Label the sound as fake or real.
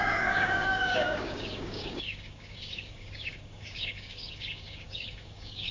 fake